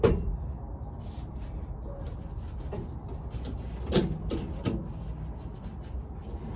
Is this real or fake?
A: real